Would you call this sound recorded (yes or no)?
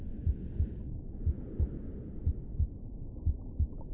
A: yes